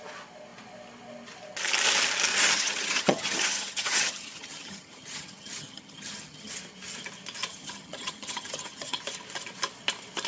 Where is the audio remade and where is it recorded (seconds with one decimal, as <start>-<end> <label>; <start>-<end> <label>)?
0.0-2.3 recorded; 2.3-6.5 remade; 6.5-7.5 recorded; 7.5-9.0 remade; 9.0-10.3 recorded